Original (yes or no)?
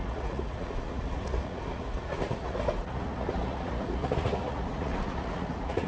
no